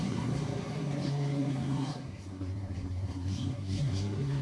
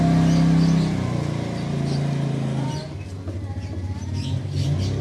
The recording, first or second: second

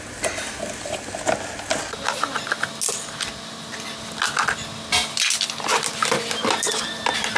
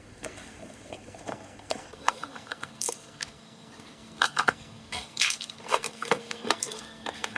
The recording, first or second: first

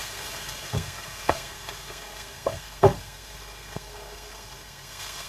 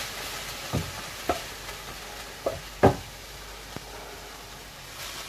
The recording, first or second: second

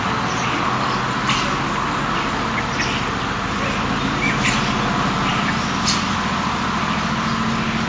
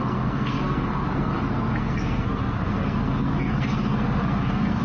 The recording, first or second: first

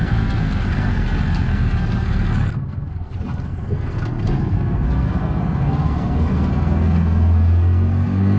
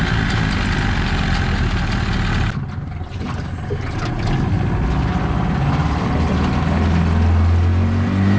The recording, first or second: second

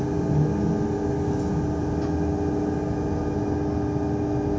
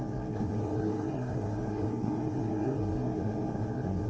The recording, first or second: first